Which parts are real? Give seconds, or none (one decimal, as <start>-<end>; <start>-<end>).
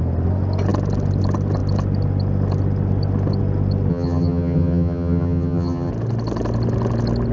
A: 0.0-3.9; 5.9-7.3